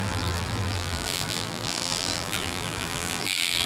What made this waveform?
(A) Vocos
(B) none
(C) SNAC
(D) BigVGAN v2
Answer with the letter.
D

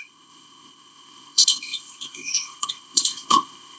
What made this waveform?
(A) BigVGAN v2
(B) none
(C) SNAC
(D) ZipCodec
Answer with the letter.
D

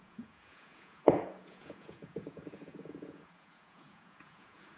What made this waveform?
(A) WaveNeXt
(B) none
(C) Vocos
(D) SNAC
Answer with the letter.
C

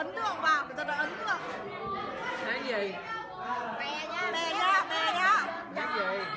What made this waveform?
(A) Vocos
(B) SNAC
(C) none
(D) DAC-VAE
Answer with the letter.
C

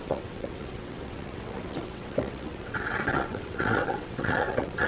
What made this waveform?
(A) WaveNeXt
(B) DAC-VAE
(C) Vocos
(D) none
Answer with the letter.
A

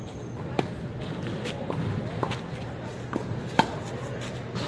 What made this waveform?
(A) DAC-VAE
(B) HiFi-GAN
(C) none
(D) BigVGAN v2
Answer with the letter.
C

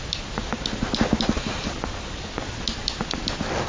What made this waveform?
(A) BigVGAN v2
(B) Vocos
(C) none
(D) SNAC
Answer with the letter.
C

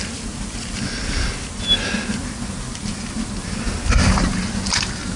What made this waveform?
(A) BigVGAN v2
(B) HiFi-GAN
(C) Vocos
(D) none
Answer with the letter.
D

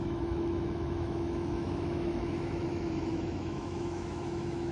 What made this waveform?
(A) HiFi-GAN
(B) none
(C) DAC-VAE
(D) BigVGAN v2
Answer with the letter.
C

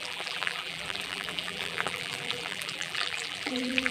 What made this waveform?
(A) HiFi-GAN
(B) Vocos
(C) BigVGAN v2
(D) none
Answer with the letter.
C